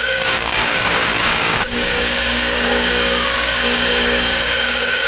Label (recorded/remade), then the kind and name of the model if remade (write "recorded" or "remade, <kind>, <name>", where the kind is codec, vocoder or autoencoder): remade, codec, DAC